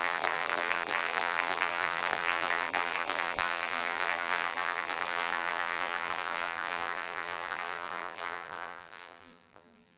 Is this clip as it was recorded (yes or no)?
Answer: no